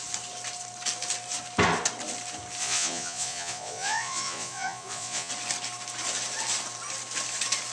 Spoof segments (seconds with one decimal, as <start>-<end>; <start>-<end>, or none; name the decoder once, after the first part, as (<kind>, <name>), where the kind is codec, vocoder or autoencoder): 2.6-5.3 (vocoder, Vocos)